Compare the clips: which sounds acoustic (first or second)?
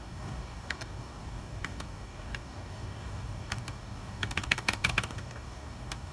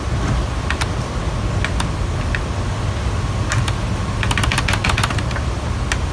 second